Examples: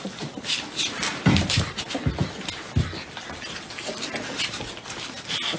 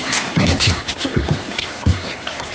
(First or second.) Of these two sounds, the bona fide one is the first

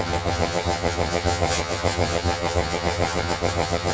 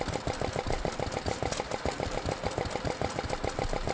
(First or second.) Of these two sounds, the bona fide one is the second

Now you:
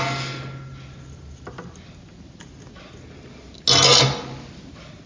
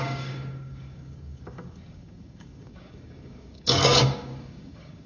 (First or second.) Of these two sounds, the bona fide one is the first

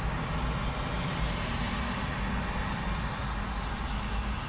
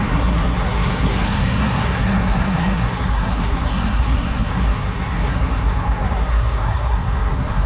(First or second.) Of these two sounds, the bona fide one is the first